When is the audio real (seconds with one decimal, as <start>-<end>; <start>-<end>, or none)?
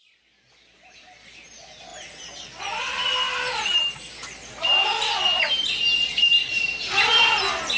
0.0-7.8